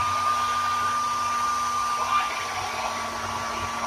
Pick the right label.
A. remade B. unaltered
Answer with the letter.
B